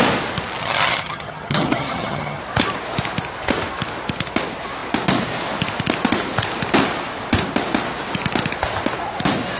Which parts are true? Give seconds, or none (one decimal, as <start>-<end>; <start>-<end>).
0.0-0.6; 2.4-9.6